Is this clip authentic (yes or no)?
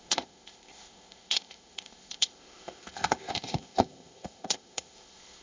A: no